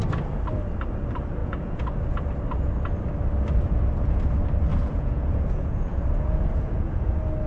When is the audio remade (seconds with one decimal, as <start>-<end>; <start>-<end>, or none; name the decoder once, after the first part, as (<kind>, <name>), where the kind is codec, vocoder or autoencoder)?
1.4-2.0 (vocoder, Vocos); 4.7-7.1